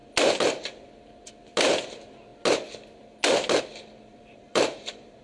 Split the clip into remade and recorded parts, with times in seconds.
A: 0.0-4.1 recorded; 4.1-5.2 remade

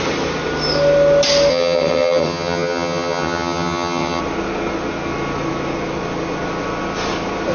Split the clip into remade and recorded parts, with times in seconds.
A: 0.0-1.5 recorded; 1.5-4.2 remade; 4.2-7.5 recorded

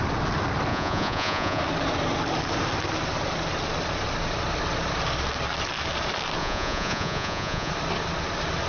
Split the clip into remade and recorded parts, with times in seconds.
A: 0.0-0.7 recorded; 0.7-1.6 remade; 1.6-6.4 recorded; 6.4-7.7 remade; 7.7-8.7 recorded

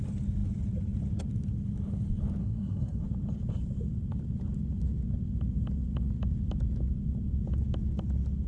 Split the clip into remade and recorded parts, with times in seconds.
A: 0.0-2.4 recorded; 2.4-3.0 remade; 3.0-8.5 recorded

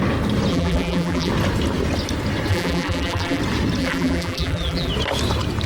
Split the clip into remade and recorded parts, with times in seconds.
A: 0.0-0.5 recorded; 0.5-1.3 remade; 1.3-2.5 recorded; 2.5-3.4 remade; 3.4-3.8 recorded; 3.8-4.9 remade; 4.9-5.7 recorded

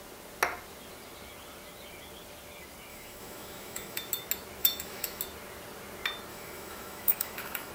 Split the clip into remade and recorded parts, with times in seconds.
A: 0.0-2.9 recorded; 2.9-4.1 remade; 4.1-4.6 recorded; 4.6-5.2 remade; 5.2-6.3 recorded; 6.3-7.7 remade

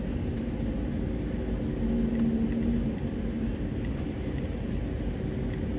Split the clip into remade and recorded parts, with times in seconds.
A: 0.0-5.8 recorded

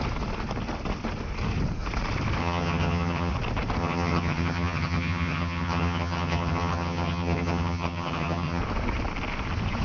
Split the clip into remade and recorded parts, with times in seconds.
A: 0.0-2.4 recorded; 2.4-3.3 remade; 3.3-3.8 recorded; 3.8-8.6 remade; 8.6-9.8 recorded